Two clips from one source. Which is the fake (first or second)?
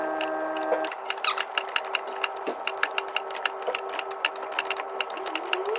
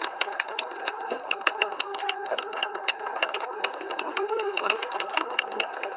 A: second